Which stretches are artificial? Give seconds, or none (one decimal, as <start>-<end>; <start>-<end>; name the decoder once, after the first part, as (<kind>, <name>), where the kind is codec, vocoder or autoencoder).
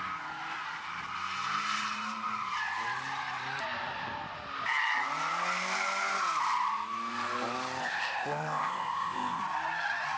7.8-9.4 (codec, ZipCodec)